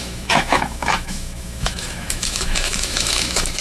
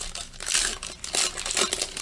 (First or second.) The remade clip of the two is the first